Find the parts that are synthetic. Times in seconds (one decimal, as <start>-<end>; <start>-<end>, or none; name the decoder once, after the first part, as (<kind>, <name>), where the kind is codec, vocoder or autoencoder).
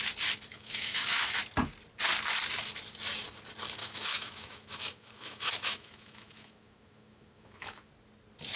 0.5-1.4 (autoencoder, DAC-VAE); 3.8-7.9